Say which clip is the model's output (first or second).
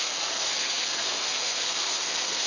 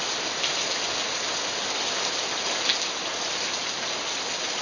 first